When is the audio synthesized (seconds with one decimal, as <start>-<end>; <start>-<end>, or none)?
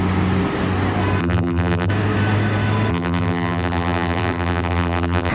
1.2-1.9; 2.9-5.3